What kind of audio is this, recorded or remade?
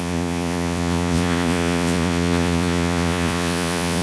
remade